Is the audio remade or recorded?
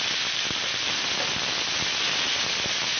recorded